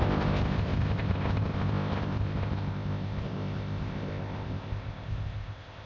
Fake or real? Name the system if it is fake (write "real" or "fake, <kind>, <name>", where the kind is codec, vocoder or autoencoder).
fake, codec, ZipCodec